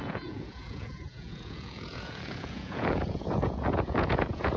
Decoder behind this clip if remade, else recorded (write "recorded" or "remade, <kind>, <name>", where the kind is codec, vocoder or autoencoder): remade, vocoder, Vocos